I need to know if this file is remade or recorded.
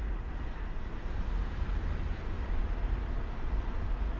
recorded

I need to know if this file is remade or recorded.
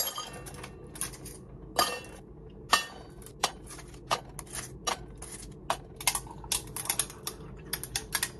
recorded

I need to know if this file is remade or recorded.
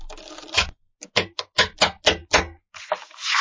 recorded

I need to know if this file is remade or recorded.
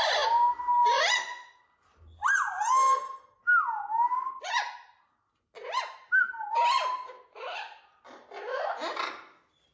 recorded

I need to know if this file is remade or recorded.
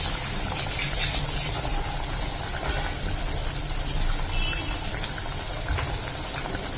recorded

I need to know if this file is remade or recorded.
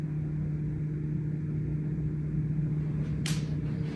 recorded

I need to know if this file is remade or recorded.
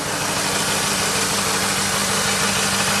recorded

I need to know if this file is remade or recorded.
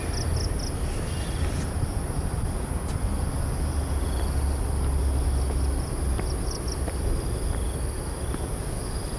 recorded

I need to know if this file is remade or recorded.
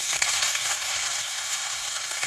remade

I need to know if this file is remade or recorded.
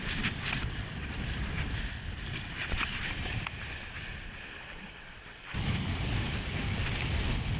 remade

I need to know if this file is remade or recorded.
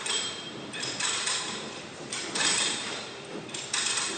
remade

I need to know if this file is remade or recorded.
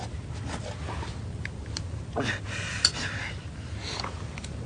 recorded